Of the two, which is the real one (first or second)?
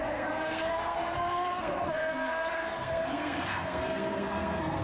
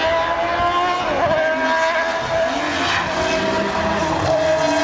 second